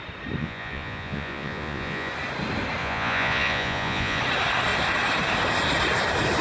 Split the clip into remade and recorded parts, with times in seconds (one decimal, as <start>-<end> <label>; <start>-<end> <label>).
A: 0.0-0.4 recorded; 0.4-2.1 remade; 2.1-2.8 recorded; 2.8-4.2 remade; 4.2-6.4 recorded